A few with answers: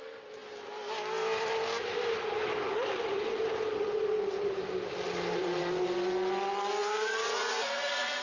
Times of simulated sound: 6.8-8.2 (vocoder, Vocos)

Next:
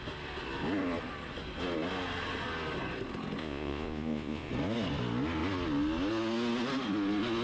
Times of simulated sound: 3.4-4.5 (vocoder, Vocos)

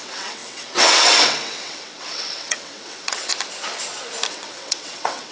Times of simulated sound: 0.0-3.3 (vocoder, WaveNeXt); 4.3-5.3

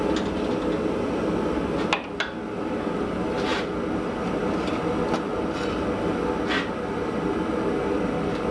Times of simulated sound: none

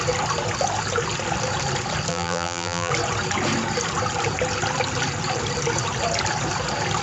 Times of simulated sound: 2.1-2.9 (vocoder, BigVGAN v2)

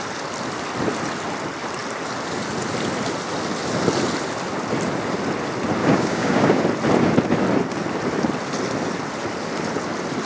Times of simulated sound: 5.8-6.6 (codec, DAC)

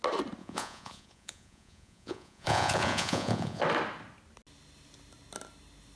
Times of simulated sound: 0.4-3.6 (vocoder, Vocos)